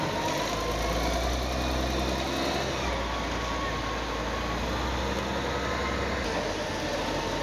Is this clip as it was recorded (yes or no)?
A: yes